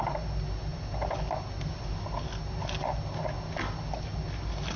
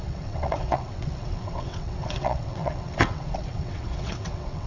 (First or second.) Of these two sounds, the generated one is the second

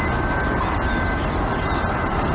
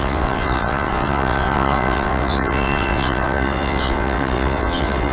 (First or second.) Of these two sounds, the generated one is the second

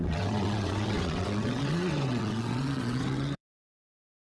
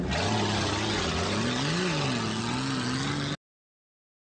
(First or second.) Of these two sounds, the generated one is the first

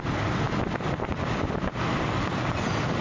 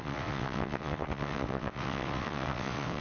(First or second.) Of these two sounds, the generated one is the second